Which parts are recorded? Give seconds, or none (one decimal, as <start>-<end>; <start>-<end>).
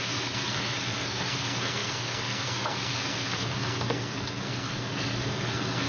none